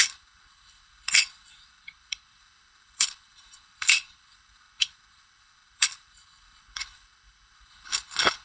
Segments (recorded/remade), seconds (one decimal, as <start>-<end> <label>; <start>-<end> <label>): 0.0-8.4 remade